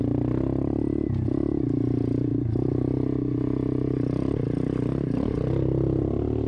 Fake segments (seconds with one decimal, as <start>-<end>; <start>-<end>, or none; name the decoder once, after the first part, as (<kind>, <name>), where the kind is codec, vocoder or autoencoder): none